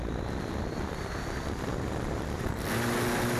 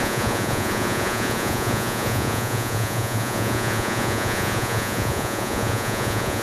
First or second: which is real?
first